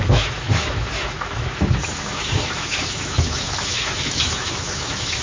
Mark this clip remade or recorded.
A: remade